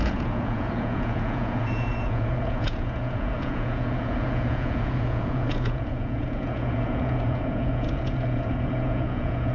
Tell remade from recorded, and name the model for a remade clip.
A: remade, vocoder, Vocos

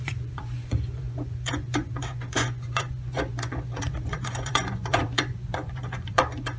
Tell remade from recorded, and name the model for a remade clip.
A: remade, vocoder, Vocos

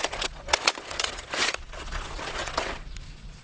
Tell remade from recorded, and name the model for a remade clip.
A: remade, vocoder, Vocos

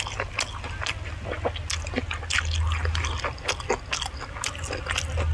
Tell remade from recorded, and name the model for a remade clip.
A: recorded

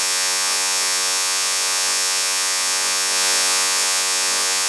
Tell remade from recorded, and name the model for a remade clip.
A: remade, vocoder, Vocos